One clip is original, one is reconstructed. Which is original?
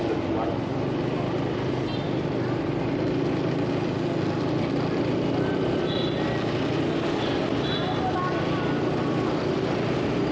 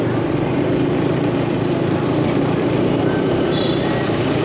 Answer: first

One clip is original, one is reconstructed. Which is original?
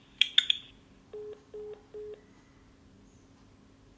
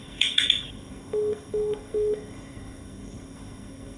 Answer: first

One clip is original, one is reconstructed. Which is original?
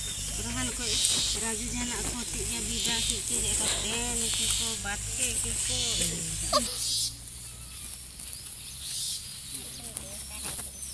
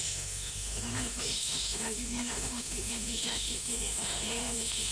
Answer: first